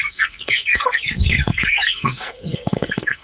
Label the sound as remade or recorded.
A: remade